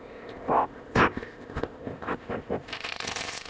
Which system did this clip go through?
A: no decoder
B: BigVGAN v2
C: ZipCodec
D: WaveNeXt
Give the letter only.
C